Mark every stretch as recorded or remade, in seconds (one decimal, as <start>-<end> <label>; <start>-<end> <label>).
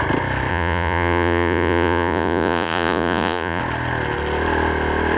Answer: 0.0-0.5 recorded; 0.5-3.6 remade; 3.6-5.2 recorded